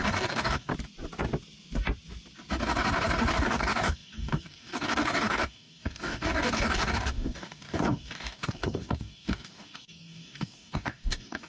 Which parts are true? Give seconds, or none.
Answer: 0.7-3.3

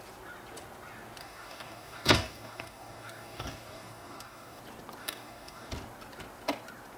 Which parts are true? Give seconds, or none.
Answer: 0.0-1.2; 4.6-5.0; 5.7-7.0

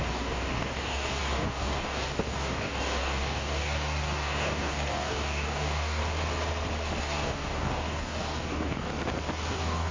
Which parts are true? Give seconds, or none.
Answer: 6.0-7.0; 8.9-9.5

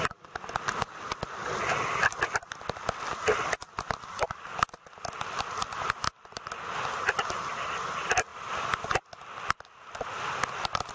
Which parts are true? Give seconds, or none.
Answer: 0.0-10.9